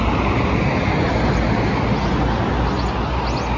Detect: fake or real real